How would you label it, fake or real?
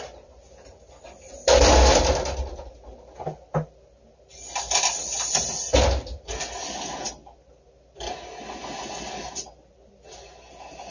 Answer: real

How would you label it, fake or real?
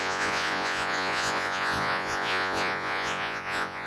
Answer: fake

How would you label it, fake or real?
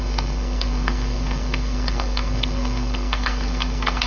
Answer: fake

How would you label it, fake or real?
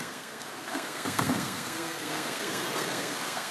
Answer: fake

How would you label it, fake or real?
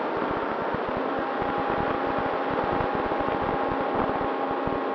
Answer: real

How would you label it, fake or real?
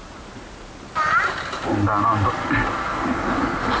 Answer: real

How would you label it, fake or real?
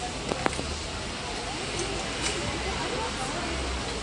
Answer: real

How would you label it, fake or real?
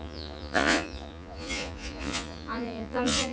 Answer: fake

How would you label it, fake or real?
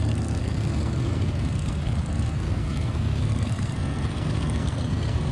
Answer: fake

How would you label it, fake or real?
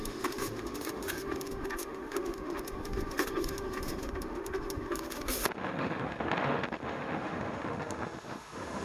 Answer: fake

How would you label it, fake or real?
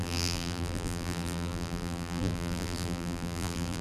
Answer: fake